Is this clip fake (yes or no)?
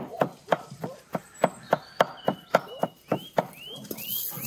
no